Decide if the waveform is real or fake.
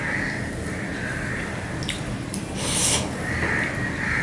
real